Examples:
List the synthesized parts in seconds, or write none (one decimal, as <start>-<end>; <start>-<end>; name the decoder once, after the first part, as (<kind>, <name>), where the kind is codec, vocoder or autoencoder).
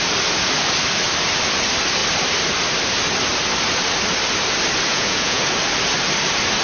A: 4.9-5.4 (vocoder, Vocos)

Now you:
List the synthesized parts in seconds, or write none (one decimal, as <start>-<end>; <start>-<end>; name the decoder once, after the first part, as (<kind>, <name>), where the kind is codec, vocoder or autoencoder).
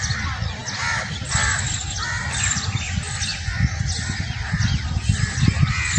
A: none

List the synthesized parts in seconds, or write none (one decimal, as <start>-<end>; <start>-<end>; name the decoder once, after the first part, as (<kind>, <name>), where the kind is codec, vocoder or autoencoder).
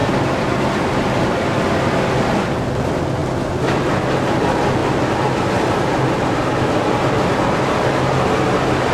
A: none